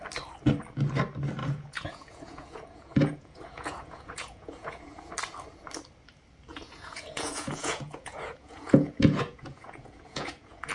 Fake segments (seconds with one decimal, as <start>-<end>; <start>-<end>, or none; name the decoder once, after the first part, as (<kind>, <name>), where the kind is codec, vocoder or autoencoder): 1.4-5.1 (vocoder, Vocos); 6.5-10.7